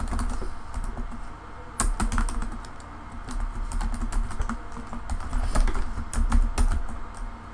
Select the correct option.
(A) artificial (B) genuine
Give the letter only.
B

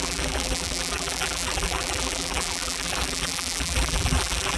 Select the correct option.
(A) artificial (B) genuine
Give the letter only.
A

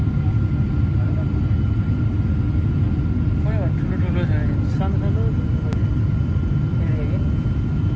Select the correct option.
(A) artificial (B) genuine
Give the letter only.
B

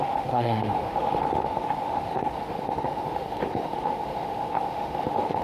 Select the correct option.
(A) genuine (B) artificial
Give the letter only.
B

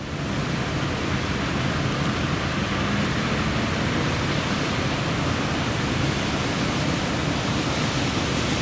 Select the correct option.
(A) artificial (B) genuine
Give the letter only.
B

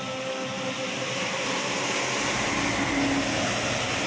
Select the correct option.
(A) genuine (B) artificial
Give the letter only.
A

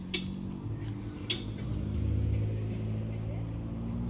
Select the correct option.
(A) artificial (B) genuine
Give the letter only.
B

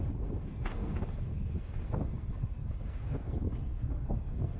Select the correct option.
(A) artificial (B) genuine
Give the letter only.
A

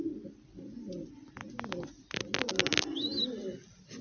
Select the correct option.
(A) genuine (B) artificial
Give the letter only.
A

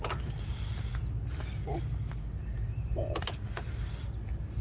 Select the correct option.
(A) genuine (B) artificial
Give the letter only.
A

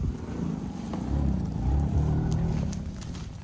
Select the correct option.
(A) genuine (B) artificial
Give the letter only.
A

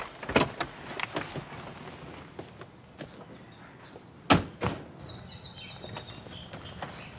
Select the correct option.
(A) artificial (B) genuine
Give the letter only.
B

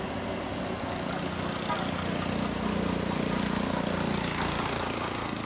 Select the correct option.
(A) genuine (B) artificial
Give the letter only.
A